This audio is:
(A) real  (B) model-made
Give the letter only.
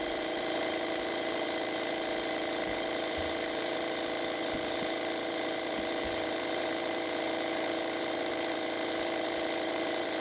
B